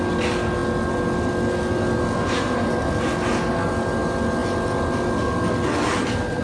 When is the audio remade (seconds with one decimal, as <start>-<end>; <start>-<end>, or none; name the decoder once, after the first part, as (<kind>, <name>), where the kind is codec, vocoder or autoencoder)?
none